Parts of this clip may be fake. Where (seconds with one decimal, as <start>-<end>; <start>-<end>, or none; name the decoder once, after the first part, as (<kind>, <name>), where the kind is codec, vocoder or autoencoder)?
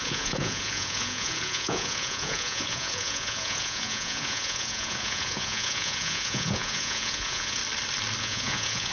0.0-7.6 (vocoder, Vocos); 8.2-8.9